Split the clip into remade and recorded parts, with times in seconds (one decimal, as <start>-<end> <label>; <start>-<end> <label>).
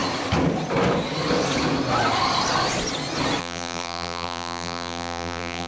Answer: 0.0-3.4 recorded; 3.4-5.7 remade